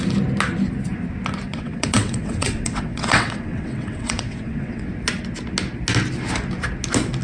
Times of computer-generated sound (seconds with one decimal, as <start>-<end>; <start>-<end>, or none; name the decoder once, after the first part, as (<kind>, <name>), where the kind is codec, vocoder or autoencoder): 1.5-4.9 (vocoder, WaveNeXt)